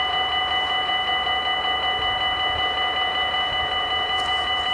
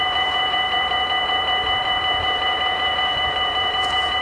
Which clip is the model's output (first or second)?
second